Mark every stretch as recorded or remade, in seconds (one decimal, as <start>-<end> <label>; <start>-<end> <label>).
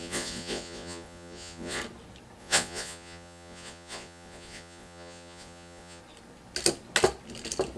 0.0-1.8 remade; 1.8-2.4 recorded; 2.4-6.0 remade; 6.0-7.8 recorded